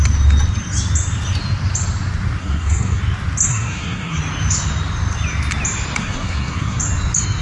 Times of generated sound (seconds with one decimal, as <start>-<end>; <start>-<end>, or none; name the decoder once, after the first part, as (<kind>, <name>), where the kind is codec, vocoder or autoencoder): 2.4-3.0 (codec, SNAC); 3.5-4.2; 6.0-6.8